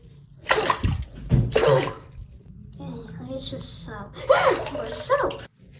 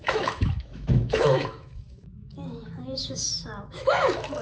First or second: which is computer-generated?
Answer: second